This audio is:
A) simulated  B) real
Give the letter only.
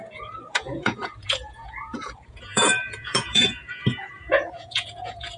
A